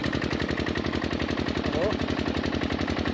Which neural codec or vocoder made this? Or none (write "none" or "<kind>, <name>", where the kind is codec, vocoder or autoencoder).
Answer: none